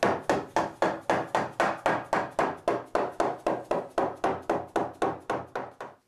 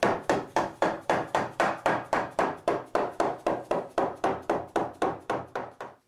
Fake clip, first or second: second